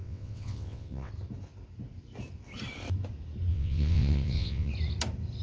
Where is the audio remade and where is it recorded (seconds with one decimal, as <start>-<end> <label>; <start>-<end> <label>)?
0.0-1.1 remade; 1.1-3.5 recorded; 3.5-4.7 remade; 4.7-5.4 recorded